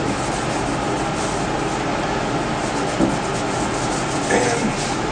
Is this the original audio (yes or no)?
yes